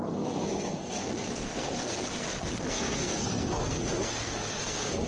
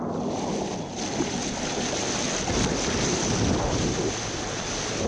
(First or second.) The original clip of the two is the second